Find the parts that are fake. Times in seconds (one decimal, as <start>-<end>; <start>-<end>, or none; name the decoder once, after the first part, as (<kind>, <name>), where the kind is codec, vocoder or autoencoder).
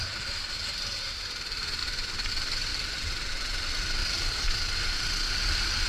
0.0-1.8 (vocoder, BigVGAN v2); 2.3-5.9